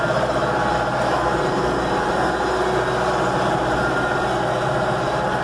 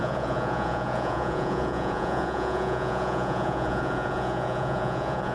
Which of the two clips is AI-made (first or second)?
second